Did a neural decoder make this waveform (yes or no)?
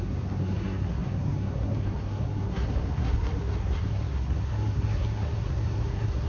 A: yes